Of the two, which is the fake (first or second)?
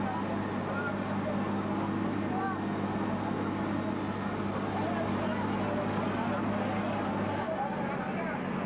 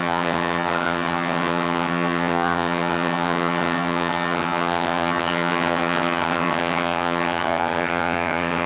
second